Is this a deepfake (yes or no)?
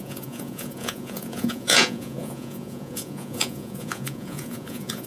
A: yes